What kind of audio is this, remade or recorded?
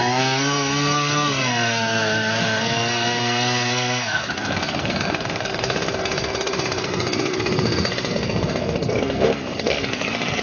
remade